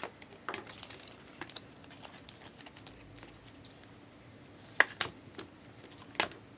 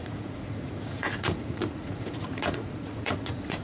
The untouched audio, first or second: first